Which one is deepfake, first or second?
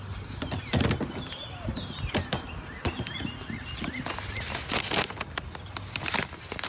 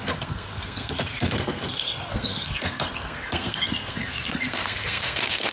second